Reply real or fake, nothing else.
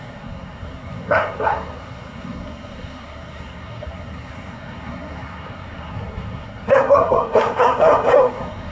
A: fake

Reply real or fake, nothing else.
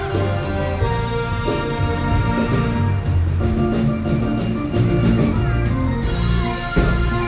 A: real